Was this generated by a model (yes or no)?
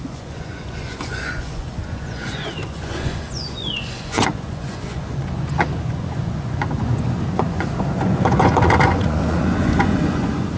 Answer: yes